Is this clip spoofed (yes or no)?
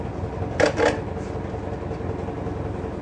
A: no